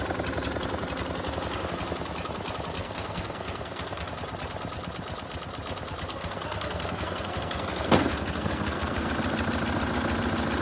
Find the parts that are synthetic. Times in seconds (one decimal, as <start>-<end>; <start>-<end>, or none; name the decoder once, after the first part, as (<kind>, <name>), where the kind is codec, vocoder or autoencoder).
2.8-4.1 (codec, SNAC); 6.1-9.1